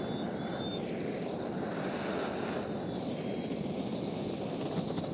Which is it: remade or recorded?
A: recorded